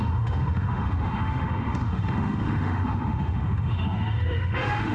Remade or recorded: remade